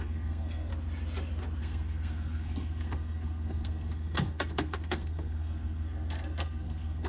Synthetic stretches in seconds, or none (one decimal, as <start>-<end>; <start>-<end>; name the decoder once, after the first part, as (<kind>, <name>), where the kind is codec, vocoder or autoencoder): 0.0-0.7 (codec, SNAC); 1.6-7.1

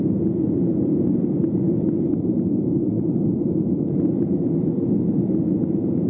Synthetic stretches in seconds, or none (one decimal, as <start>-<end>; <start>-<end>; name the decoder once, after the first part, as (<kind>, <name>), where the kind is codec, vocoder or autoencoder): none

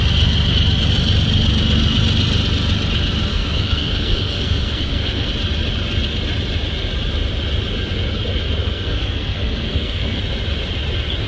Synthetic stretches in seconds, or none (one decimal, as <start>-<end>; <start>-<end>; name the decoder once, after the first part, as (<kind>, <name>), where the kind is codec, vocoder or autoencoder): 3.3-5.3 (codec, SNAC); 8.6-10.2

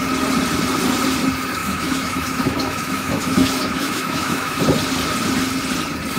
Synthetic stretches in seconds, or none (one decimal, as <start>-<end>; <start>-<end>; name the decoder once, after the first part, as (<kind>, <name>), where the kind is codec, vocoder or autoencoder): 1.6-4.6 (autoencoder, DAC-VAE)

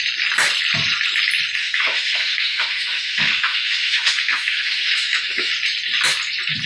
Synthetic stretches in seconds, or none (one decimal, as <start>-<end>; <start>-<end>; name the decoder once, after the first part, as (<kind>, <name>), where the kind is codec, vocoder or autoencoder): 1.6-5.5 (autoencoder, DAC-VAE)

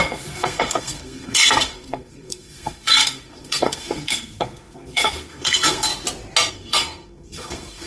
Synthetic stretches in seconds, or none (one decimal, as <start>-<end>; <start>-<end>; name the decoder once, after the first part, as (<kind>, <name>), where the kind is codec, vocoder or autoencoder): 0.0-5.9 (codec, SNAC); 6.5-7.9

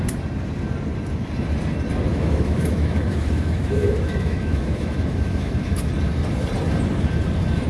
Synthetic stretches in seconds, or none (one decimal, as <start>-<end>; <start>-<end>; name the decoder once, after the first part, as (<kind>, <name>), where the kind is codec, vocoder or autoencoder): 2.1-5.9 (autoencoder, DAC-VAE)